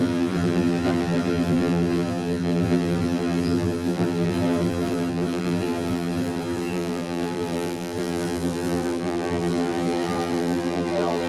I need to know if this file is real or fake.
fake